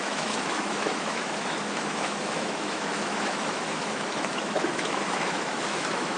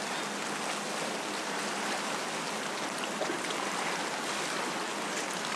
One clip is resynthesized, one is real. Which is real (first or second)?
second